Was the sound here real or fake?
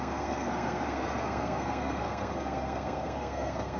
fake